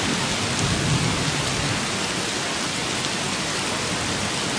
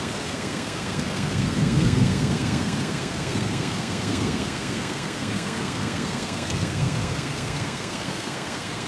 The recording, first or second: first